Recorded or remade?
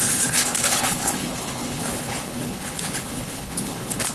remade